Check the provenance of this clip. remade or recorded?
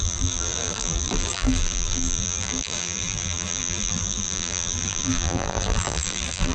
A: remade